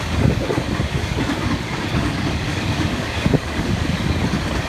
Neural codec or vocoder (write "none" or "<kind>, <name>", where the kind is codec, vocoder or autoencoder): codec, DAC